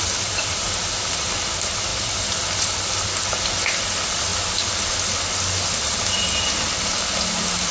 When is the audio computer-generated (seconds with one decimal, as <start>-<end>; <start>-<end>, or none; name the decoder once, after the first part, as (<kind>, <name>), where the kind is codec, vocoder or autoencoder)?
none